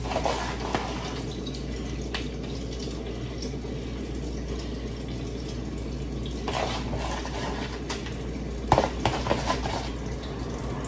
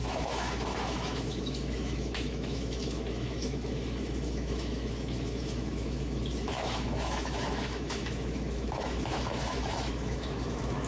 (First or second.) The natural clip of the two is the first